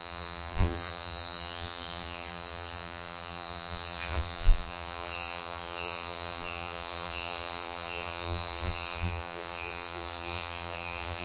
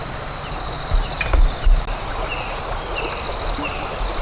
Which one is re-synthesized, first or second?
first